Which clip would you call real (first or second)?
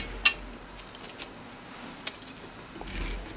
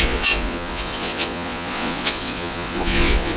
first